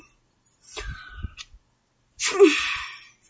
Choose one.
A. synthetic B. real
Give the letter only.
B